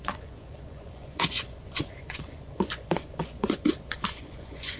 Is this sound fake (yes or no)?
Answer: yes